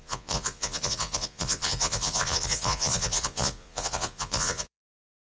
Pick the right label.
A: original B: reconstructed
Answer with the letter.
B